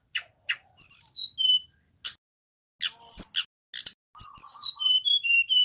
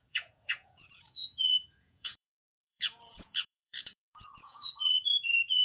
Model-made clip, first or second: second